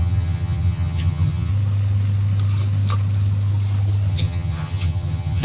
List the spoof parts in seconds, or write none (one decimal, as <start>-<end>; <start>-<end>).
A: 0.0-1.5; 4.1-5.4